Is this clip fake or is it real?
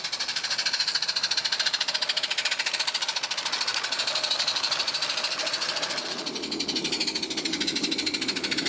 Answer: real